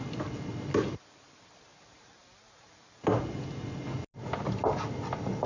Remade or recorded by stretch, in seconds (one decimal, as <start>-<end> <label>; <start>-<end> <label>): 0.0-1.7 recorded; 1.7-3.5 remade; 3.5-5.5 recorded